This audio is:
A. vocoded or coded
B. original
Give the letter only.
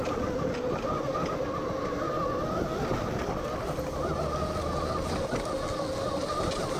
B